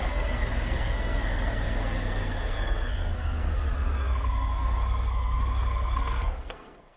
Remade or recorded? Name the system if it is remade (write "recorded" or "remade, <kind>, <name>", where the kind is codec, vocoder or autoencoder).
remade, codec, SNAC